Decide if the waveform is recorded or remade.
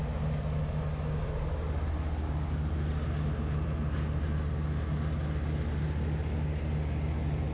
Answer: recorded